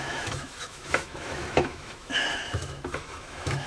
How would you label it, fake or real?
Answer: fake